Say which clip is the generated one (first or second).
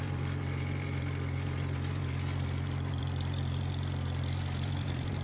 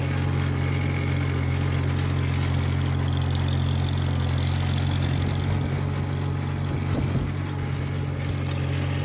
first